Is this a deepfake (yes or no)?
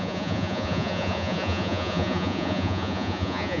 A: yes